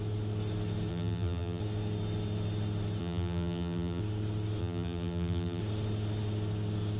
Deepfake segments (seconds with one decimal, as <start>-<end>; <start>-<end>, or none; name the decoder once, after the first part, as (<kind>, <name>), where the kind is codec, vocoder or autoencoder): 0.9-1.6 (vocoder, BigVGAN v2); 3.0-4.0; 4.6-5.6

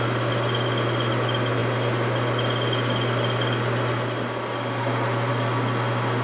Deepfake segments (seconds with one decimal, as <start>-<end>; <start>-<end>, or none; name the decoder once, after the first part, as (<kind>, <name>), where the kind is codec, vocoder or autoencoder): none

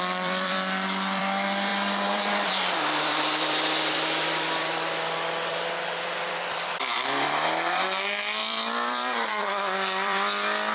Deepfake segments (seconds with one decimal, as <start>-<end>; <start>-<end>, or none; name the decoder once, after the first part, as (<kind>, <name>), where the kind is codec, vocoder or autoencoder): 0.0-10.7 (vocoder, BigVGAN v2)